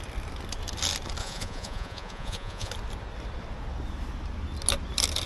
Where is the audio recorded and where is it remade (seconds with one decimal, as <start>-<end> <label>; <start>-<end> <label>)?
0.0-1.2 recorded; 1.2-2.7 remade; 2.7-5.3 recorded